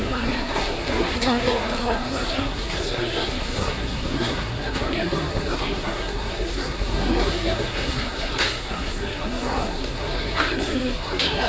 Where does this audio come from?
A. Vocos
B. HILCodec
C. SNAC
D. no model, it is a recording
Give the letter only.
C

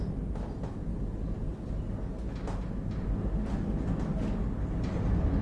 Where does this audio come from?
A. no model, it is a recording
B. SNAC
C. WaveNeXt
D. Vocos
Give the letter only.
A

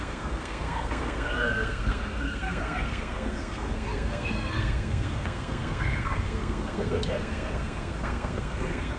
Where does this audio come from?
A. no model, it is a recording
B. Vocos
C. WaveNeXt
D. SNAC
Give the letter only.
D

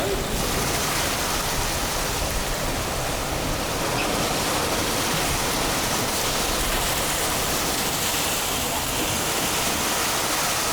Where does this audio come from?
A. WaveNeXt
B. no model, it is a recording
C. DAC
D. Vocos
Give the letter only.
B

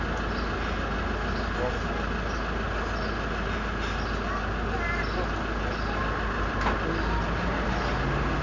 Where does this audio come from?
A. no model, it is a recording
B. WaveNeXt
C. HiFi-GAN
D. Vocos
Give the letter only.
A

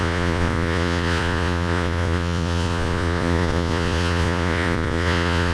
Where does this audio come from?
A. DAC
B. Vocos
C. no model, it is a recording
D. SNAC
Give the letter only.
B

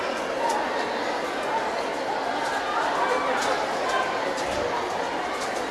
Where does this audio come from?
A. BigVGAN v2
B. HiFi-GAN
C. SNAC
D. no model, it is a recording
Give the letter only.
D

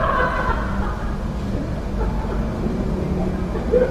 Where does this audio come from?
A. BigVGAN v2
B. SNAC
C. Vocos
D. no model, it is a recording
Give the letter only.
D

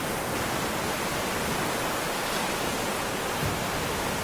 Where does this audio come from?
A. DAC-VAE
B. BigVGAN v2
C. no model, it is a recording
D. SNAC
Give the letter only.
C